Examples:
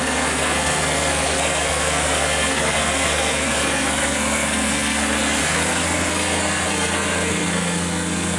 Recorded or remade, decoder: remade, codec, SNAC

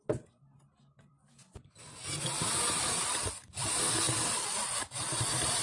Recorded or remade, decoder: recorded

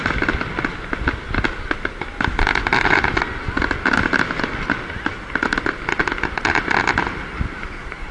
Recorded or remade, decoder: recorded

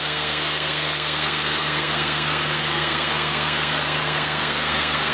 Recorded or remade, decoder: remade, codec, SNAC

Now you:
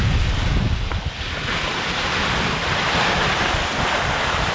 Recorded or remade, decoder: recorded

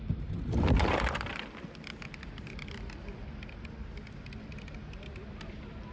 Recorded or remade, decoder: recorded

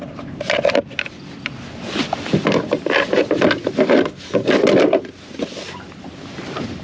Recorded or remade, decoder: recorded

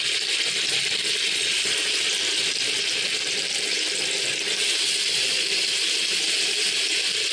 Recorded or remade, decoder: recorded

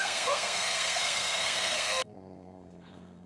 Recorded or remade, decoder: remade, codec, SNAC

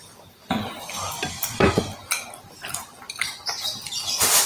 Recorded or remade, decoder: recorded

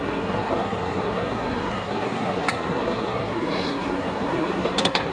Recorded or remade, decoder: remade, codec, SNAC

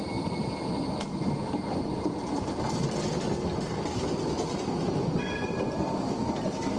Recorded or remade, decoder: recorded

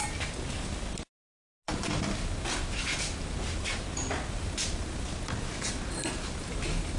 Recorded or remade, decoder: recorded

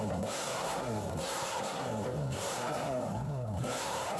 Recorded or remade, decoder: remade, codec, SNAC